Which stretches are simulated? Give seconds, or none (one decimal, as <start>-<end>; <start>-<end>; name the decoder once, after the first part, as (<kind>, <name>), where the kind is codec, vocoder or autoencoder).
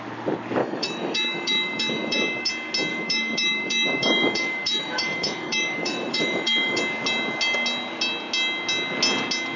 0.6-2.5 (autoencoder, DAC-VAE); 2.9-6.8